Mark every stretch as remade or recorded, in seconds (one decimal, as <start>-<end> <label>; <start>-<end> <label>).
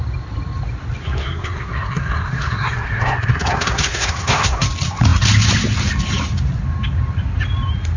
0.0-1.0 recorded; 1.0-4.6 remade; 4.6-8.0 recorded